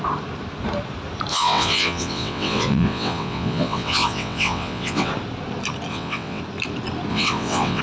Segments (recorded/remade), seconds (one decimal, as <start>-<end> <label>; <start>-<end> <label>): 0.0-1.3 recorded; 1.3-5.1 remade; 5.1-5.9 recorded; 5.9-6.4 remade; 6.4-7.1 recorded; 7.1-7.8 remade